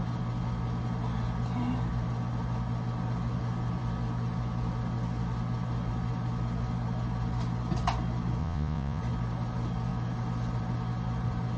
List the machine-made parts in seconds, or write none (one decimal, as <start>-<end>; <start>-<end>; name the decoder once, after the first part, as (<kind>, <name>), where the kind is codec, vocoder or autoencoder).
8.4-9.0 (vocoder, Vocos)